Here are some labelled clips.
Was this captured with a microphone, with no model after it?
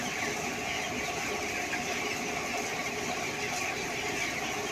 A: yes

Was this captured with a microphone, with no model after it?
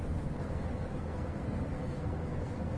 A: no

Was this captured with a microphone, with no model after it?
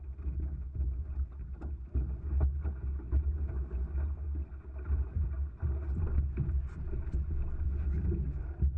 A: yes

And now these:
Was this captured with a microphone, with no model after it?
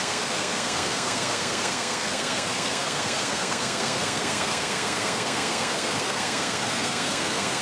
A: no